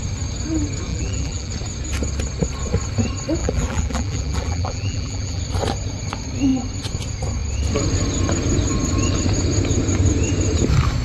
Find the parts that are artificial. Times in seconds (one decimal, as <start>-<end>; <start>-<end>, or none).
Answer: 0.9-1.5; 3.4-5.4